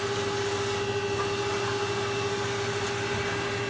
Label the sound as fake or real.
real